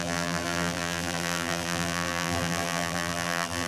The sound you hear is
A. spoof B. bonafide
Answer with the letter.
A